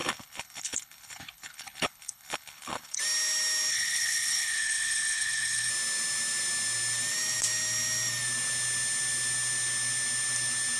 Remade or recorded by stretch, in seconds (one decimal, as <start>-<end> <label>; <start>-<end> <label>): 0.0-3.0 remade; 3.0-3.7 recorded; 3.7-5.7 remade; 5.7-10.8 recorded